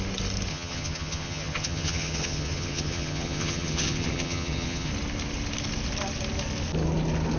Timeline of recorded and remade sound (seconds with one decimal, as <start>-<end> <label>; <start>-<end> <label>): 0.0-0.5 recorded; 0.5-4.9 remade; 4.9-7.4 recorded